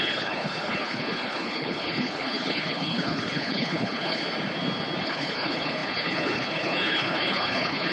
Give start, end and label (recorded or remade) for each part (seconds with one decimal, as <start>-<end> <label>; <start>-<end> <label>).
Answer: 0.0-4.2 remade; 4.2-5.0 recorded; 5.0-7.9 remade

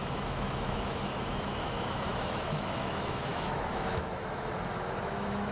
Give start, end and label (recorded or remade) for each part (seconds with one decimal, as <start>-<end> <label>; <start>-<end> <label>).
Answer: 0.0-5.5 remade

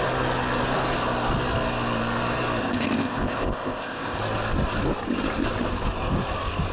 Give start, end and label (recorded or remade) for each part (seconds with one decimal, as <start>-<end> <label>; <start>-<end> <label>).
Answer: 0.0-2.6 recorded; 2.6-4.2 remade; 4.2-6.7 recorded

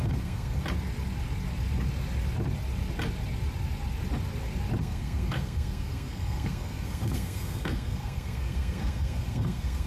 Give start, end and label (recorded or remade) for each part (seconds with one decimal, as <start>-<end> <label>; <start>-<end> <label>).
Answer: 0.0-0.6 remade; 0.6-4.8 recorded; 4.8-9.9 remade

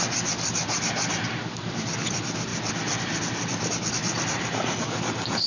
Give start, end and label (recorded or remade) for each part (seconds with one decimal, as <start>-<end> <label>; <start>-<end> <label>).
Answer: 0.0-5.5 recorded

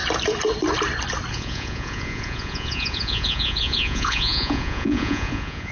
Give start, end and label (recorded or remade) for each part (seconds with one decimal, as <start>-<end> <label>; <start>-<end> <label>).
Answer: 0.0-1.3 recorded; 1.3-5.7 remade

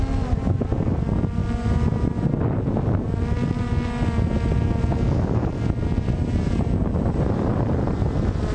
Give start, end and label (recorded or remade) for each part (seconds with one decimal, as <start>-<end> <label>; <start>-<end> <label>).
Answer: 0.0-8.5 recorded

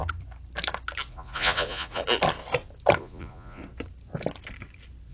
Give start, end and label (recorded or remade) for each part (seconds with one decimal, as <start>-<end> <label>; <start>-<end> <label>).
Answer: 0.0-1.1 recorded; 1.1-2.0 remade; 2.0-3.0 recorded; 3.0-3.6 remade; 3.6-5.1 recorded